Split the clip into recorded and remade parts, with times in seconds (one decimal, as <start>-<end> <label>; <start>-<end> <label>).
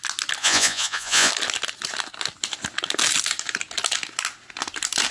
0.0-0.4 recorded; 0.4-1.3 remade; 1.3-5.1 recorded